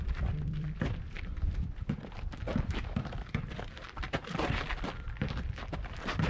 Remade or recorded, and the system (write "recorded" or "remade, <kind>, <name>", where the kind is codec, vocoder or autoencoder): remade, vocoder, BigVGAN v2